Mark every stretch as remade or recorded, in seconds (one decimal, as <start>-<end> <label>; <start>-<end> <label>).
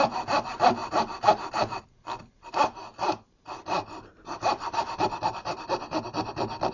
0.0-0.8 recorded; 0.8-1.8 remade; 1.8-2.9 recorded; 2.9-6.3 remade; 6.3-6.7 recorded